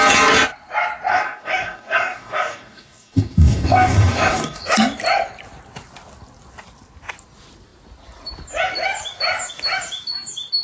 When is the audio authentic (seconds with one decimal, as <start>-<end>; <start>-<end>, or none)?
0.0-1.1; 4.7-10.6